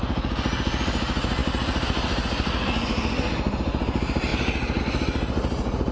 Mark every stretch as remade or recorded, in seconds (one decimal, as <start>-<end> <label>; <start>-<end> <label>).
0.0-5.9 recorded